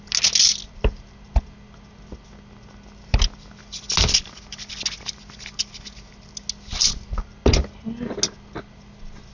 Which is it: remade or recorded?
recorded